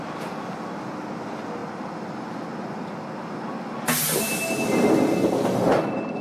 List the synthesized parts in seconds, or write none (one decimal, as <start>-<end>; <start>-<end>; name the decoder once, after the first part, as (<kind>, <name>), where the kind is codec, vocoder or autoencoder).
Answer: none